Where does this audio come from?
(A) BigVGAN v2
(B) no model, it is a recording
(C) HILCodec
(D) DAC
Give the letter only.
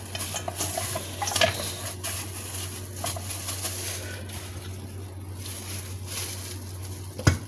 B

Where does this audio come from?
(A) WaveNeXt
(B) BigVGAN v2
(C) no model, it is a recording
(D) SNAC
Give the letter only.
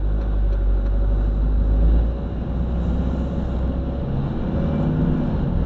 C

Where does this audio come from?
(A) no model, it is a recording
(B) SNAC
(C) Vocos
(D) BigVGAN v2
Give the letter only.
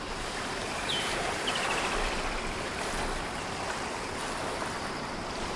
D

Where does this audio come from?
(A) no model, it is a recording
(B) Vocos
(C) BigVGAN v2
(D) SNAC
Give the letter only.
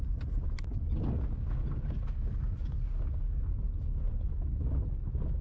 A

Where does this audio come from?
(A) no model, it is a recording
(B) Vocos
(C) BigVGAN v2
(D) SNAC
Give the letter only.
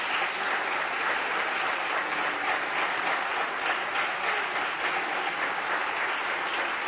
A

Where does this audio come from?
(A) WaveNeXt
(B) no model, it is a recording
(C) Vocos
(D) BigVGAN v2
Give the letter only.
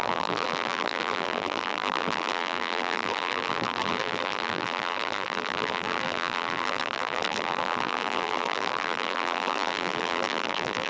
D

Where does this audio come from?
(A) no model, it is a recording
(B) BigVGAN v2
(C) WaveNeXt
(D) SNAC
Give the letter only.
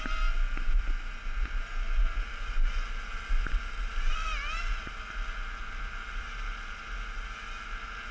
A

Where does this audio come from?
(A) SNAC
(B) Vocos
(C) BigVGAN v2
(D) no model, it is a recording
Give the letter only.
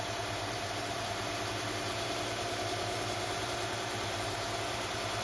C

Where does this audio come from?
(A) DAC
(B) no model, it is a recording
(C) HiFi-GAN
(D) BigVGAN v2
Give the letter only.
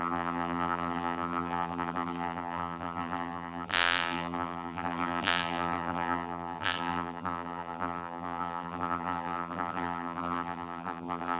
D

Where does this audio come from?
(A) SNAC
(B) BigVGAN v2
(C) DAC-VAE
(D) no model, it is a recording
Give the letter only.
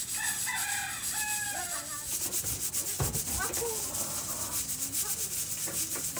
D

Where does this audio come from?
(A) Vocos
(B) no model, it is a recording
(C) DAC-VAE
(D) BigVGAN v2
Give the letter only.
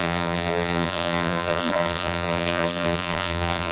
D